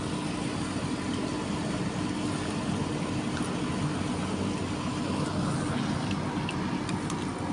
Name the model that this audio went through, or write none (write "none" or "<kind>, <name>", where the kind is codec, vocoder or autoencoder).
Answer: none